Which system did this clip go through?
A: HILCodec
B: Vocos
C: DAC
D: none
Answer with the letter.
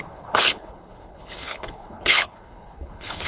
A